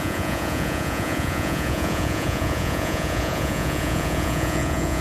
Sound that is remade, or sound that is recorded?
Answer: remade